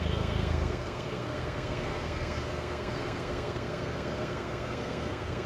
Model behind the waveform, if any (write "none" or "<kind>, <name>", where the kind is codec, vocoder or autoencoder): codec, SNAC